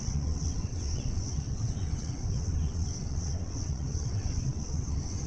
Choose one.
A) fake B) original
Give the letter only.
A